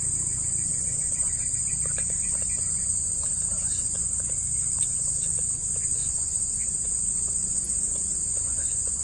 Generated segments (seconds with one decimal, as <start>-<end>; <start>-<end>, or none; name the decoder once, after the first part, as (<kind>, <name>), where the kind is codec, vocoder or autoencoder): 0.0-9.0 (vocoder, Vocos)